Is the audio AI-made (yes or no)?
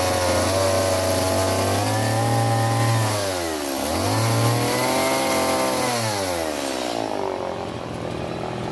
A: no